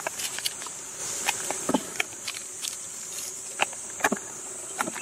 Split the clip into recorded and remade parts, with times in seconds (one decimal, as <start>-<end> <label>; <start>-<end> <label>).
0.0-2.4 recorded; 2.4-5.0 remade